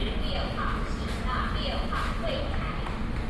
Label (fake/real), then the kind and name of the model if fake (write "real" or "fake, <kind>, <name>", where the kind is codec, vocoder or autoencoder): real